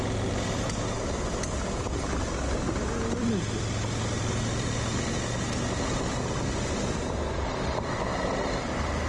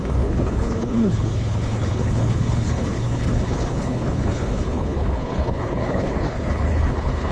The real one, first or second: first